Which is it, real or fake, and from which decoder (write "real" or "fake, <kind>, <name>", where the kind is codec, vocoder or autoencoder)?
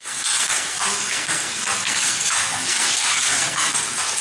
fake, codec, SNAC